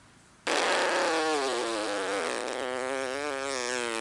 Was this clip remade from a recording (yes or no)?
no